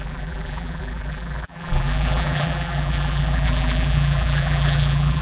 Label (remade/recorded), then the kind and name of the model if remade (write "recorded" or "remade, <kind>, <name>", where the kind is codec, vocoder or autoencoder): remade, vocoder, BigVGAN v2